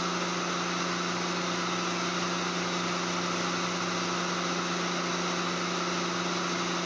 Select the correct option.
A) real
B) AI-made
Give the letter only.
A